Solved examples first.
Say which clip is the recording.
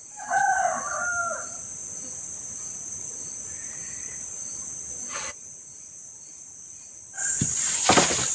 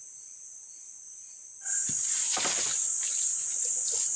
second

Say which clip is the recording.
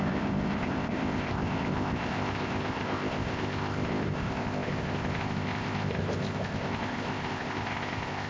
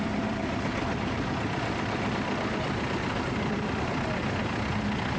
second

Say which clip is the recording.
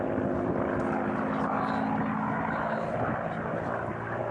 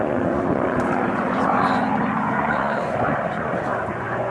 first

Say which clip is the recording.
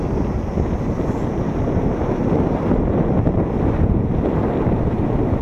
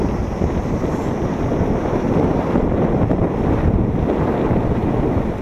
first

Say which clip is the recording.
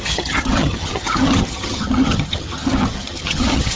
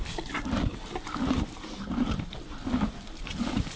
second